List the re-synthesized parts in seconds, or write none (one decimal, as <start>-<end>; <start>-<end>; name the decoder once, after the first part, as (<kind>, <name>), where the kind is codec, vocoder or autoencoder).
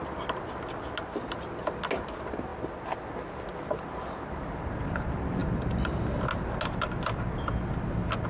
none